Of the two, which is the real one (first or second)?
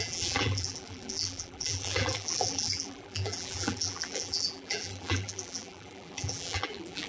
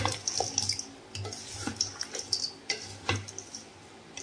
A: second